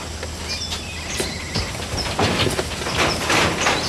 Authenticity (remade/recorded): recorded